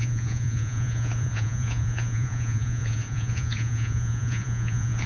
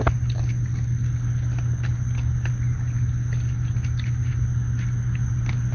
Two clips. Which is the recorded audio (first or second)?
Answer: second